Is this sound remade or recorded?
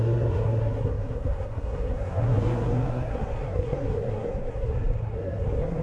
remade